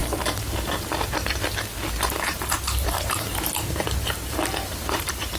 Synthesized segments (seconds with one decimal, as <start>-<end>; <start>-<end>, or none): 2.5-5.4